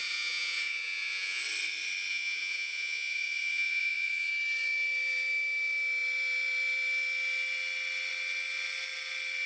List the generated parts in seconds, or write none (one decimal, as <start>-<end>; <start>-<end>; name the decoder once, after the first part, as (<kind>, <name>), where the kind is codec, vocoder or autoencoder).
0.0-1.4 (vocoder, Vocos); 2.1-4.3